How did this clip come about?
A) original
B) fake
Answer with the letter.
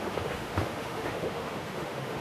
B